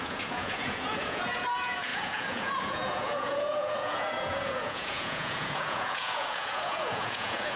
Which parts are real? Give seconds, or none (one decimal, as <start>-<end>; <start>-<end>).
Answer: none